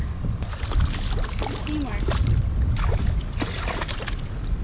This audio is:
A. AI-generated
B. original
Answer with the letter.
B